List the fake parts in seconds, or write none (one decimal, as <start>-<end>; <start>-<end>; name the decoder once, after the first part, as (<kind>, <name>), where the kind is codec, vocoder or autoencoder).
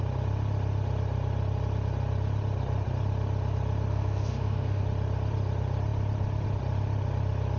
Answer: 3.9-4.8 (codec, SNAC)